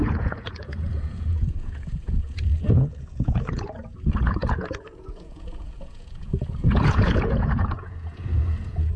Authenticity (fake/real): fake